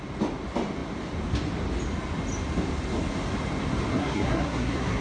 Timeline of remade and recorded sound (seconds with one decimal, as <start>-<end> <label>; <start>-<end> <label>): 0.0-3.9 recorded; 3.9-5.0 remade